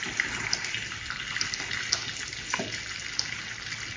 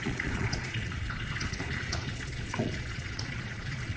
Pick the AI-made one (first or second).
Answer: second